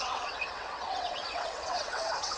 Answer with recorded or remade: remade